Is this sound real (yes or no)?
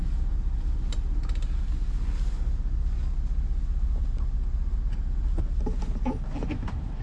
yes